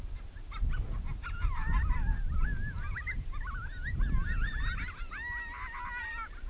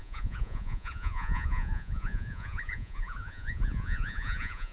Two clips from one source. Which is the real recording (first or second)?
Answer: first